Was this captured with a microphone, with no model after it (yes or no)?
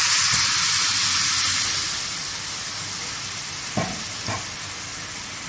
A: yes